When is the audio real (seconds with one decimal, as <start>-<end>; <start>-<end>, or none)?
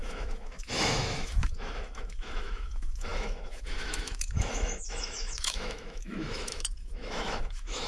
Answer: none